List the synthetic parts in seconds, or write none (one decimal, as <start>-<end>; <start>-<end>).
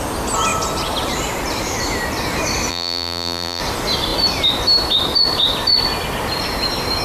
2.7-3.6